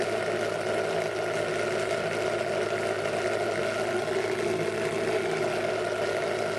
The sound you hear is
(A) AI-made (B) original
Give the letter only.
B